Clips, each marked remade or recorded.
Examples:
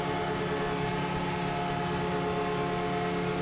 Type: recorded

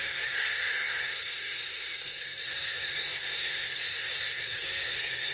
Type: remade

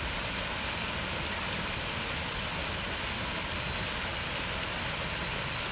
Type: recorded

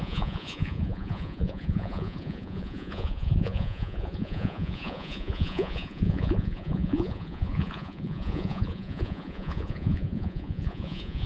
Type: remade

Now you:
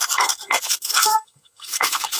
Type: remade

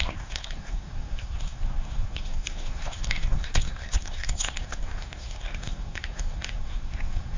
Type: remade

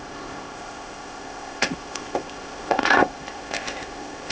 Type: remade